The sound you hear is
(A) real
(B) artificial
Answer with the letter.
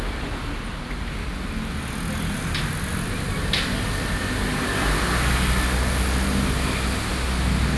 A